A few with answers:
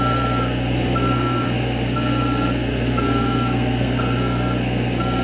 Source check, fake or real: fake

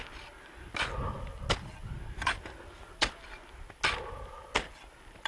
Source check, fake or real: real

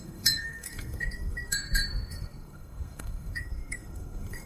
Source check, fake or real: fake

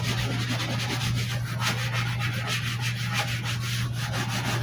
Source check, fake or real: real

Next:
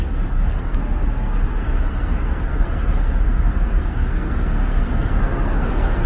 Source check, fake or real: fake